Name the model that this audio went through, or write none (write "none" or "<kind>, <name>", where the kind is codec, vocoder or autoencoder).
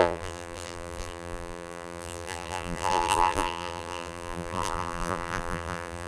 vocoder, BigVGAN v2